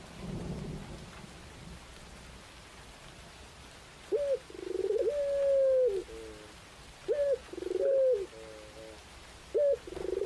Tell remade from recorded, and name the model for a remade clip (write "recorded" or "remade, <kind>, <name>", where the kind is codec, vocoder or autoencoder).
recorded